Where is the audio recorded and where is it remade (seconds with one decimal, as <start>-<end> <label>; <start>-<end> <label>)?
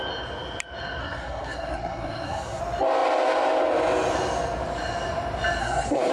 0.0-1.0 recorded; 1.0-2.6 remade; 2.6-5.6 recorded; 5.6-6.1 remade